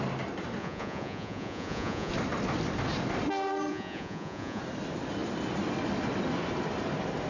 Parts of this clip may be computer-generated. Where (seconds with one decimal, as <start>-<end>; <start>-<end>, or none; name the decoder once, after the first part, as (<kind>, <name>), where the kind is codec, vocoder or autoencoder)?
0.6-2.1 (vocoder, Vocos); 3.7-4.6